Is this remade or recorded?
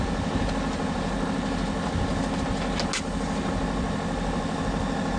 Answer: recorded